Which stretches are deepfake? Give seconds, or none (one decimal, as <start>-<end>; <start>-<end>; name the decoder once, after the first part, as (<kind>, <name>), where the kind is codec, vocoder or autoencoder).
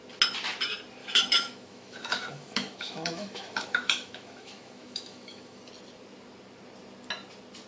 1.0-5.6 (autoencoder, DAC-VAE)